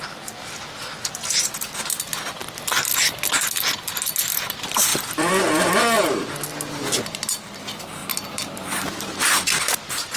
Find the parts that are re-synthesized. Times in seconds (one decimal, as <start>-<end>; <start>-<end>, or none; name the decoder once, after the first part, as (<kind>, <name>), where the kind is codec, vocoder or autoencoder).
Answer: 4.9-5.7 (vocoder, BigVGAN v2)